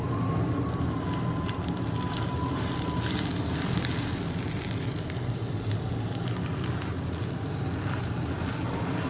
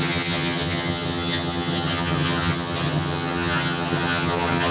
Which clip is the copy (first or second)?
second